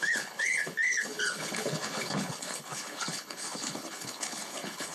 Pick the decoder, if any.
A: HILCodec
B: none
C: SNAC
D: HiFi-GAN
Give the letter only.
A